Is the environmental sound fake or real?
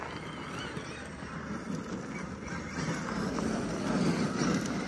real